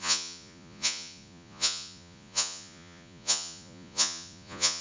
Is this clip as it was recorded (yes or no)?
no